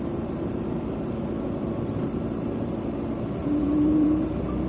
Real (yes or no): no